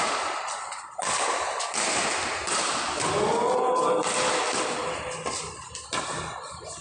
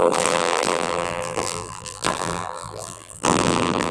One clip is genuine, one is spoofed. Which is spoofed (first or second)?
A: second